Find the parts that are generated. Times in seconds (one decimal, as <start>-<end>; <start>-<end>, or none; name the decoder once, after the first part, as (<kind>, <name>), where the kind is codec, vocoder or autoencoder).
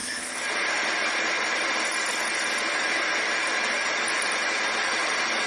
none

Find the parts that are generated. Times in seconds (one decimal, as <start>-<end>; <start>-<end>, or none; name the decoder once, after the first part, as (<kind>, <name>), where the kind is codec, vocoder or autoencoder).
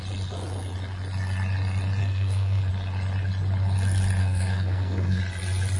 2.0-2.7 (codec, SNAC); 4.2-5.2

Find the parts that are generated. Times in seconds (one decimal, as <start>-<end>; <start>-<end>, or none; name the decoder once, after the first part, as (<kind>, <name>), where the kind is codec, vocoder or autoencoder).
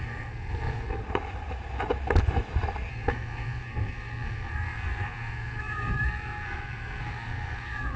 0.0-1.0 (codec, SNAC); 2.9-8.0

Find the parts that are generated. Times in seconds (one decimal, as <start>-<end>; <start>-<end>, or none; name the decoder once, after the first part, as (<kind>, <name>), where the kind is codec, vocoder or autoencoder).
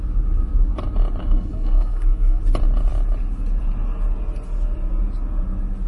1.2-2.4 (codec, SNAC)